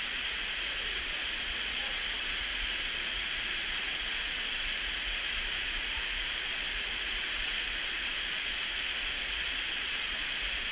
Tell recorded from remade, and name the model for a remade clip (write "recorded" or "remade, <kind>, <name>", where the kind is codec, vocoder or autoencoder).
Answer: remade, vocoder, Vocos